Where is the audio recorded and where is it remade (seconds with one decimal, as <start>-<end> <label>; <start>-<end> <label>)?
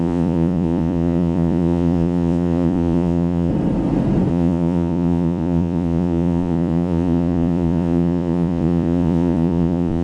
0.0-3.5 remade; 3.5-4.3 recorded; 4.3-10.0 remade